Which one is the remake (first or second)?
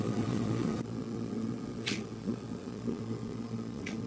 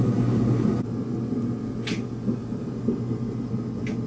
first